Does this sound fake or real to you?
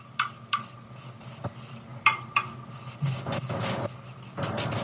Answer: real